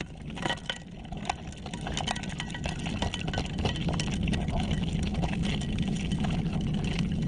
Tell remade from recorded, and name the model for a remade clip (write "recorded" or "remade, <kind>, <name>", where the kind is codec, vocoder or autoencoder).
recorded